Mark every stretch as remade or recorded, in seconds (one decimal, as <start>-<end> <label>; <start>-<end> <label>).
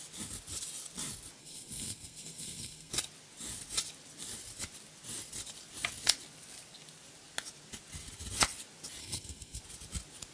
0.0-1.4 recorded; 1.4-2.9 remade; 2.9-9.0 recorded; 9.0-9.6 remade; 9.6-10.3 recorded